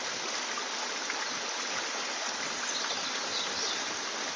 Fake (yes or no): no